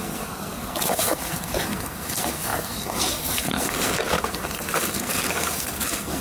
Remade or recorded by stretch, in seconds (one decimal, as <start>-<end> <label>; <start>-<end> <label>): 0.0-6.2 remade